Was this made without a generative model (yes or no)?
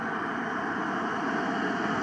yes